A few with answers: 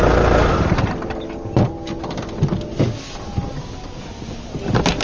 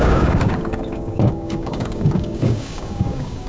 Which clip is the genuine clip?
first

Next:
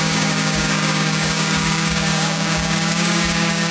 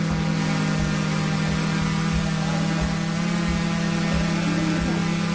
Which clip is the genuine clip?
second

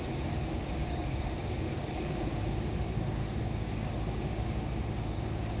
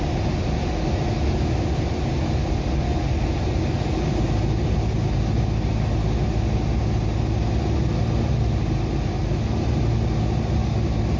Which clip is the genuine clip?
second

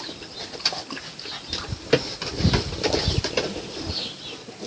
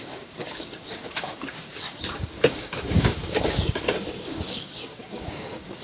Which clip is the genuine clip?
first